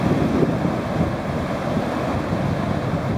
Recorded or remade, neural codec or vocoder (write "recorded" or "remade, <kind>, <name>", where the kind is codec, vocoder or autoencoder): recorded